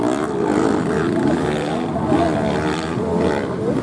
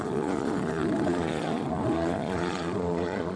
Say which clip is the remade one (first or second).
second